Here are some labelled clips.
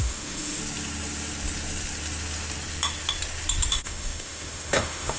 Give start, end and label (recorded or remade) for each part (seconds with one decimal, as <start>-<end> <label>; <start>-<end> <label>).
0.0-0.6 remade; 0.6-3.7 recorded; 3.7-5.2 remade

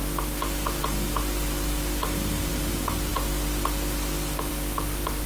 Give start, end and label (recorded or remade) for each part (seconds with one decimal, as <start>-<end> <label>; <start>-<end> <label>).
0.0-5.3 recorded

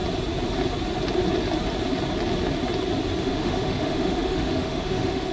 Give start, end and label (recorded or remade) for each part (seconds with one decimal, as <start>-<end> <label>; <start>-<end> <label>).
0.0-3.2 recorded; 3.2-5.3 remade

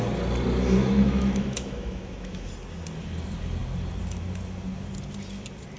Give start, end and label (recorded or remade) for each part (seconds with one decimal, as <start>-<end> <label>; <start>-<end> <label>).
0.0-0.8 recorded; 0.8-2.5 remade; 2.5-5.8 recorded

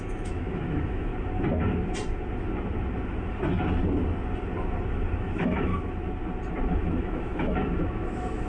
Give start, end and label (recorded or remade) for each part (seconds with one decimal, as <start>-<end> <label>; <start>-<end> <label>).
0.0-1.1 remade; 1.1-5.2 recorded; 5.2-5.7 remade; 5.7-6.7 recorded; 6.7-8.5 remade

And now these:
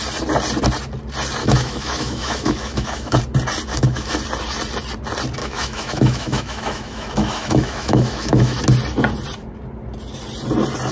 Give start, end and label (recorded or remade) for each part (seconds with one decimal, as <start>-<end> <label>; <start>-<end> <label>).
0.0-1.4 recorded; 1.4-3.2 remade; 3.2-3.7 recorded; 3.7-4.2 remade; 4.2-5.4 recorded; 5.4-8.6 remade; 8.6-10.9 recorded

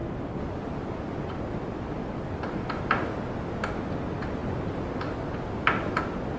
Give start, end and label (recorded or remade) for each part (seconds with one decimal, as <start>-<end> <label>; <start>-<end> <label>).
0.0-6.4 recorded

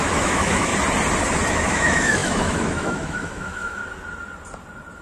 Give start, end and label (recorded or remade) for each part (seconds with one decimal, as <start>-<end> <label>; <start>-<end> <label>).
0.0-0.7 remade; 0.7-1.5 recorded; 1.5-3.8 remade; 3.8-5.0 recorded